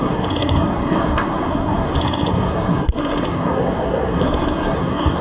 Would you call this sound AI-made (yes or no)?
yes